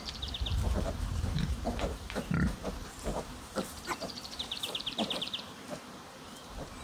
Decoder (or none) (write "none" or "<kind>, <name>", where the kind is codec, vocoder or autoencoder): vocoder, BigVGAN v2